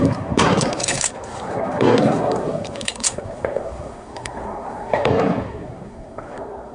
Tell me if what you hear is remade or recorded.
remade